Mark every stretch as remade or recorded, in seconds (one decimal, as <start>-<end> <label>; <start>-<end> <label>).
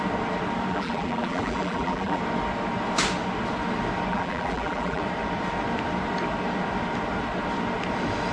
0.0-0.7 recorded; 0.7-2.2 remade; 2.2-4.1 recorded; 4.1-5.0 remade; 5.0-8.3 recorded